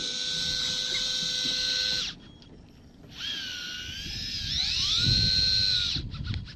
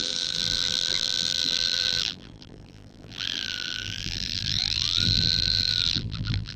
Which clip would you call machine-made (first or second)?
second